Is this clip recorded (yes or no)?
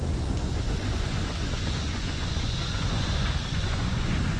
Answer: no